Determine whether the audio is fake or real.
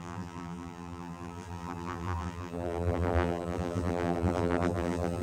fake